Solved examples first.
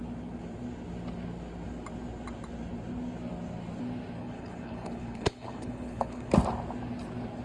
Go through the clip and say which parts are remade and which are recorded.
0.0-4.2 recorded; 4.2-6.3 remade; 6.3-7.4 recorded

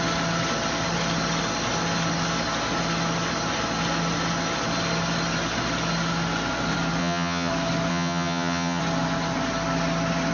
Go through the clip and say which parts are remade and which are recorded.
0.0-7.0 recorded; 7.0-7.5 remade; 7.5-7.9 recorded; 7.9-8.8 remade; 8.8-10.3 recorded